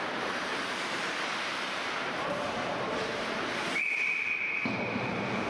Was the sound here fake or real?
fake